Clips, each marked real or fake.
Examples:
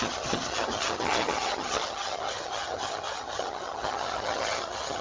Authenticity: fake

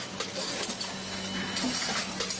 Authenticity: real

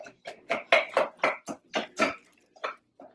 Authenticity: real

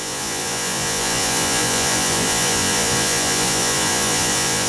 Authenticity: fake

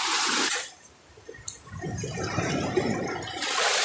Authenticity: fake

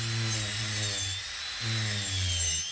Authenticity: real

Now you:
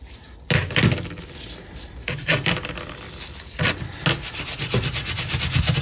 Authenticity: real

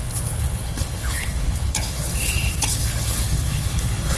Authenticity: fake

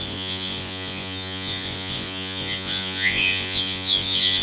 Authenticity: fake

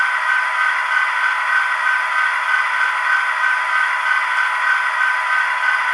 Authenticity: real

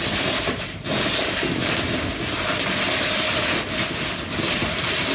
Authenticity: real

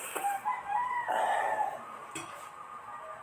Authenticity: real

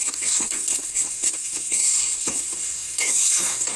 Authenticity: fake